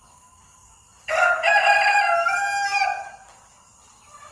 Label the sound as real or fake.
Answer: real